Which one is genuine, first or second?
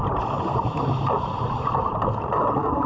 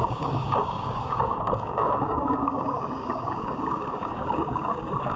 first